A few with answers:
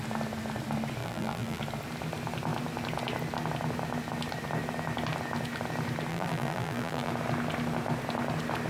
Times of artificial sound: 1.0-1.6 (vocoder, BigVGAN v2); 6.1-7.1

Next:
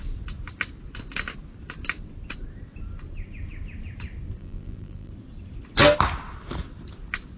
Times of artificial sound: 4.4-5.1 (vocoder, BigVGAN v2)